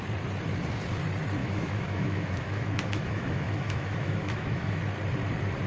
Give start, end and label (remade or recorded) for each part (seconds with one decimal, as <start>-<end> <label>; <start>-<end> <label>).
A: 0.0-1.4 recorded; 1.4-4.8 remade; 4.8-5.7 recorded

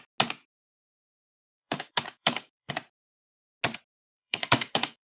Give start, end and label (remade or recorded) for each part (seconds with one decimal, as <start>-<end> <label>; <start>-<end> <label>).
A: 0.0-0.7 recorded; 0.7-2.7 remade; 2.7-4.1 recorded; 4.1-5.2 remade

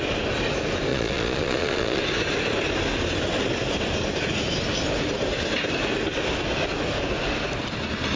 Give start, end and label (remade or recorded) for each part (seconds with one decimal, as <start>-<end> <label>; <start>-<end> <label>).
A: 0.0-0.9 recorded; 0.9-2.0 remade; 2.0-8.2 recorded

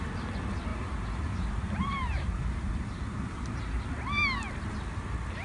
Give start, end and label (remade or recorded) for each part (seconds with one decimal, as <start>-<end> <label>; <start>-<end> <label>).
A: 0.0-0.7 recorded; 0.7-3.9 remade; 3.9-5.4 recorded

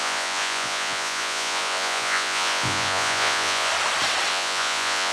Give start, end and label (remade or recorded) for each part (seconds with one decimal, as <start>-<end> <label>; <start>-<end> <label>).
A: 0.0-3.7 remade; 3.7-4.3 recorded; 4.3-5.1 remade